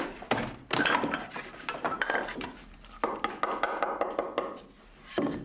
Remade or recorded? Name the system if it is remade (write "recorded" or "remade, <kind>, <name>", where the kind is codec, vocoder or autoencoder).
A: recorded